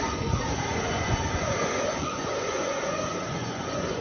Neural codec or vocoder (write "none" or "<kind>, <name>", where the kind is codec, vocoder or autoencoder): vocoder, Vocos